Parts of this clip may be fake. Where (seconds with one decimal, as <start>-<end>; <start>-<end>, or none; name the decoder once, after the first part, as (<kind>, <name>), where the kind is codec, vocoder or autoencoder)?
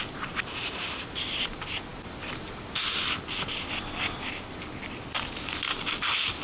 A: none